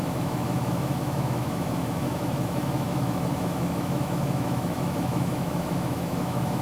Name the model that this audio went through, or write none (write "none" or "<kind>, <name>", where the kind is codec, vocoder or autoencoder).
autoencoder, DAC-VAE